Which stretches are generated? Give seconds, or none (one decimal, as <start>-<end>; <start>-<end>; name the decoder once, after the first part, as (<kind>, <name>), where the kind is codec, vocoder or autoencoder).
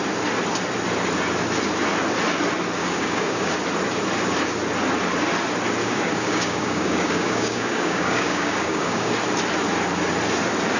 2.8-3.5 (codec, DAC); 5.8-9.1